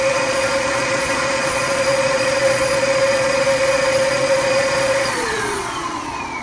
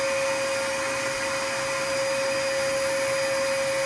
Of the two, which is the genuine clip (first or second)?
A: second